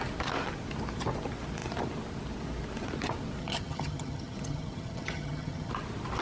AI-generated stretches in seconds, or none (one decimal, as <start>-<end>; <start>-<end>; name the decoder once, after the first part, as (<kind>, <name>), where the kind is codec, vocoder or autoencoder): 3.4-5.7 (vocoder, HiFi-GAN)